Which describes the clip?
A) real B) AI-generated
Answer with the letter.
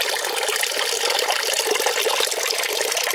A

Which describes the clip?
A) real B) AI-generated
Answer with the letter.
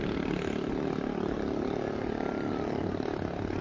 A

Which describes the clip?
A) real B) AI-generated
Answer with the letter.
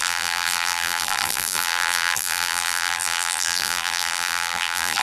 B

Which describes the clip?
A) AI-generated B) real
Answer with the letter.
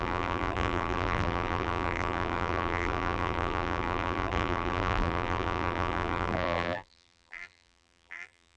A